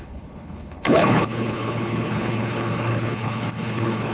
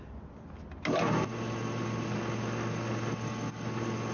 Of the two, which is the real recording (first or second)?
second